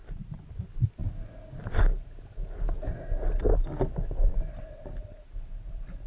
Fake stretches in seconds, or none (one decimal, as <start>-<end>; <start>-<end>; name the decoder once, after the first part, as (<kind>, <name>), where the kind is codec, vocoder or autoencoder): 0.0-0.5 (vocoder, BigVGAN v2); 4.3-6.1